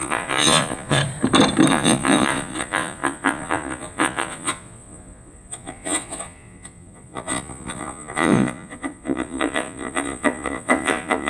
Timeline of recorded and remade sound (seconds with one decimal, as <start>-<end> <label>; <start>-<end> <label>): 0.0-1.0 remade; 1.0-1.7 recorded; 1.7-11.3 remade